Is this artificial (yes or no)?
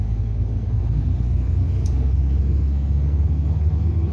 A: yes